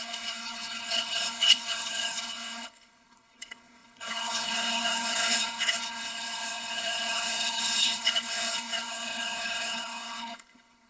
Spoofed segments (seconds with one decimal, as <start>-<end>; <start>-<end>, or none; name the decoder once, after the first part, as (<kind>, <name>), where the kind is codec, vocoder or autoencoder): 0.0-10.9 (codec, HILCodec)